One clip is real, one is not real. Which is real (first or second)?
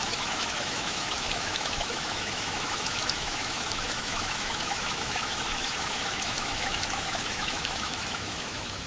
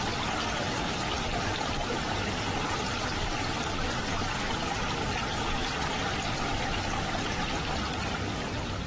second